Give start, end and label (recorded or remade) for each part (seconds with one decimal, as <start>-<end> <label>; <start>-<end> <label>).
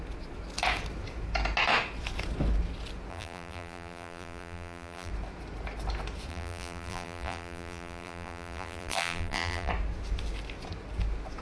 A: 0.0-3.1 recorded; 3.1-5.1 remade; 5.1-6.3 recorded; 6.3-9.7 remade; 9.7-11.4 recorded